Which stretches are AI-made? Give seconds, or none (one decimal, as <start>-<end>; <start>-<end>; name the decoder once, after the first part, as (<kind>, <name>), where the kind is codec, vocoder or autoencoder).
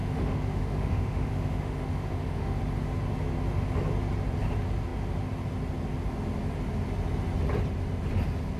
0.0-2.6 (autoencoder, DAC-VAE)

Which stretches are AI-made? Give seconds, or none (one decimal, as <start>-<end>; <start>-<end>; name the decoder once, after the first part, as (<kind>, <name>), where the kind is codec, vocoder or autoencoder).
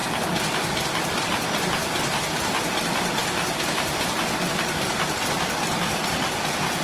none